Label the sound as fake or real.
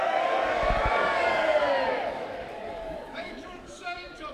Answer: fake